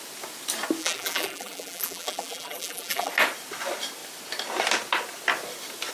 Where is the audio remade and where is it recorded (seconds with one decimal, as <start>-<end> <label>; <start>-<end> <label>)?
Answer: 0.0-0.8 recorded; 0.8-3.1 remade; 3.1-5.9 recorded